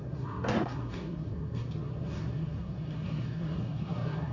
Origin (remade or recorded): remade